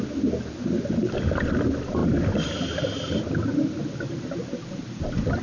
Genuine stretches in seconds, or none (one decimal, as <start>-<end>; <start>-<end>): 0.0-5.4

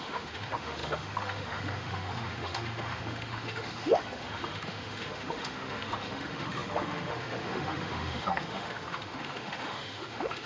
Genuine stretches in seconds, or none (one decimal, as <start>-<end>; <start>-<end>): none

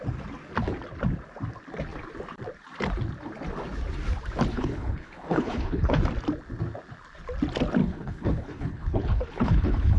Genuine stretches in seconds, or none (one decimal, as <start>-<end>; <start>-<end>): 0.0-4.5; 6.0-7.8

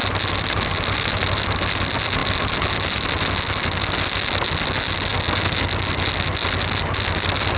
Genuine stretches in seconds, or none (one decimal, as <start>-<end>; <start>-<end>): 0.0-7.6

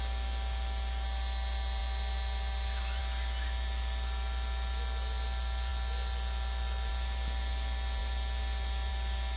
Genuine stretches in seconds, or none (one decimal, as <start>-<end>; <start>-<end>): 0.0-9.4

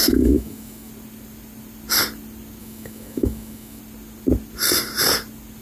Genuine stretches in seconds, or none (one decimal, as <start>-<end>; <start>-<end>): 0.9-2.6; 3.8-5.6

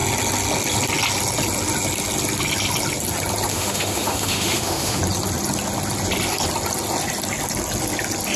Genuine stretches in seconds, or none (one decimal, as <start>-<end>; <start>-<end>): 0.0-3.5; 5.0-8.4